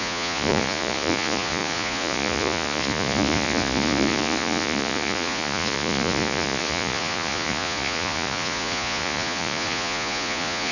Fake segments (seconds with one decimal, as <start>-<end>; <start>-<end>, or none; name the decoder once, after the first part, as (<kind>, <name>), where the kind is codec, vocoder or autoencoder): 0.0-10.7 (vocoder, Vocos)